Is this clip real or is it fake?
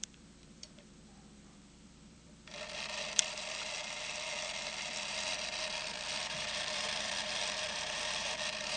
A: fake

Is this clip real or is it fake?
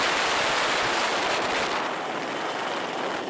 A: real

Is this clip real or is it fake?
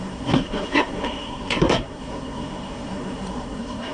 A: fake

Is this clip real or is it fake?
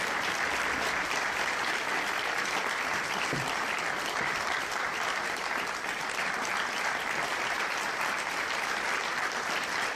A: fake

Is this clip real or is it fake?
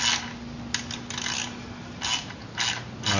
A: real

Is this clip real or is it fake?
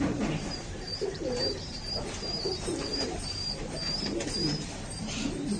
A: fake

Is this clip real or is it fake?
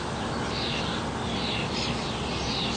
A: real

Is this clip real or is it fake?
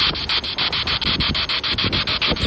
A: real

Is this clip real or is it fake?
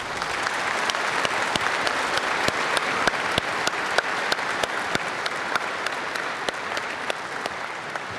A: real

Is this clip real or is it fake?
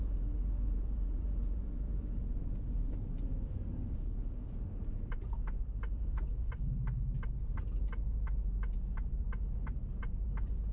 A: fake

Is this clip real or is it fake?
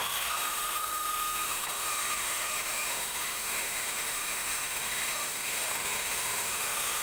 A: fake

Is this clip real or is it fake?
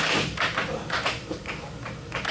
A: real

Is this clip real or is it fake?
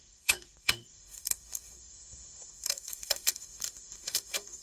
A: fake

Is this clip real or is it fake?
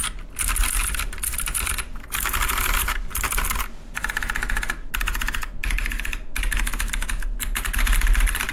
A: real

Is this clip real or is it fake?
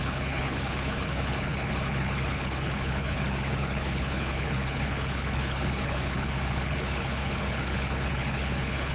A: fake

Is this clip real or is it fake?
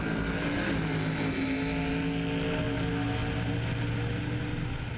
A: real